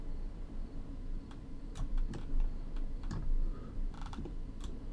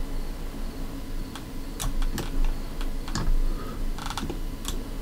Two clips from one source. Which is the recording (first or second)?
second